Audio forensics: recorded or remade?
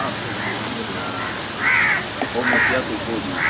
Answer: recorded